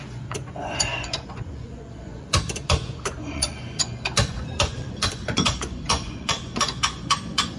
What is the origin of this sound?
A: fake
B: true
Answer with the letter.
A